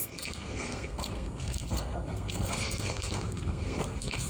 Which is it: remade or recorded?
remade